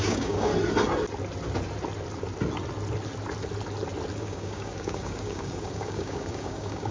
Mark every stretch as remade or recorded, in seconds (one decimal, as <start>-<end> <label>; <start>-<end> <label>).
0.0-0.5 remade; 0.5-4.2 recorded; 4.2-6.9 remade